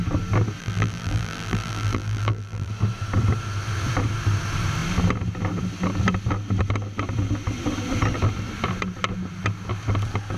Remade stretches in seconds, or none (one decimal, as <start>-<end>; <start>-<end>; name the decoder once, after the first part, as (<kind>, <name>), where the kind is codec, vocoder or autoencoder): 0.6-2.7 (vocoder, BigVGAN v2)